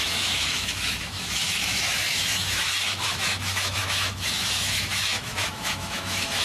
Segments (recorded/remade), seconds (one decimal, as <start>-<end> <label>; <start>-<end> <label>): 0.0-6.4 remade